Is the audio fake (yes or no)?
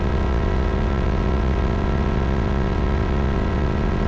yes